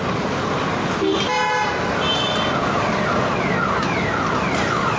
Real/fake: real